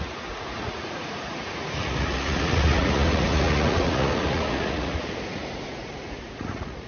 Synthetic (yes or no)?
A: yes